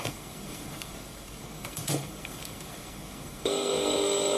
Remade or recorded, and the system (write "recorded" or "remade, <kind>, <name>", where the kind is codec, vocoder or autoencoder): remade, codec, SNAC